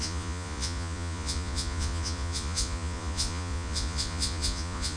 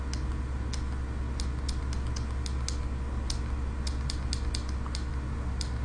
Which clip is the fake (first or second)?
first